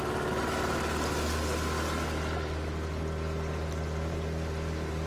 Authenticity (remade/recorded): recorded